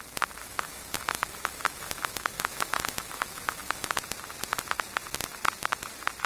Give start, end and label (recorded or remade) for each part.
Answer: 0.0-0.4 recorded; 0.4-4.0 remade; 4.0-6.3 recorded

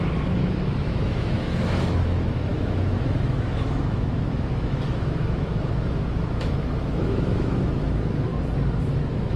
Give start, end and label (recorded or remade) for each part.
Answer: 0.0-8.3 remade; 8.3-8.8 recorded; 8.8-9.4 remade